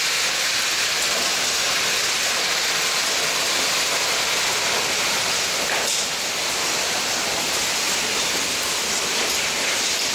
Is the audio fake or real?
real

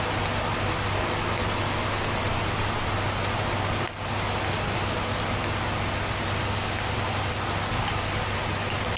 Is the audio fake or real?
real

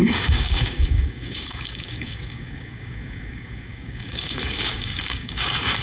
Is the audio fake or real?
fake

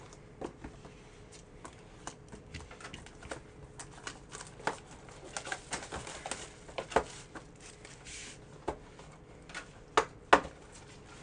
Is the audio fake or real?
real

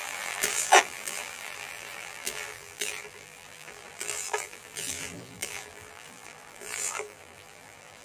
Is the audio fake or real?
fake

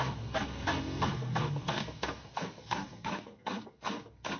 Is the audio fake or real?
fake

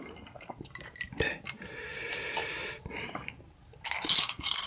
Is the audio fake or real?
fake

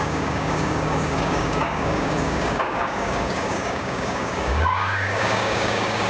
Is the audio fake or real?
fake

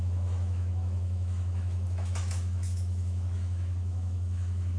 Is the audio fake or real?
fake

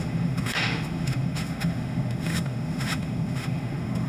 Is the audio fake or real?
fake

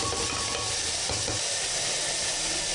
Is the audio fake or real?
real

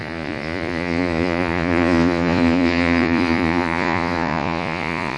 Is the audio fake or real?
fake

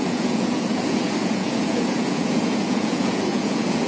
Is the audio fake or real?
fake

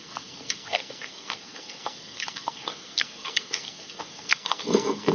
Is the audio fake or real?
fake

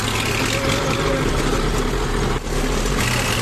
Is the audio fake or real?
real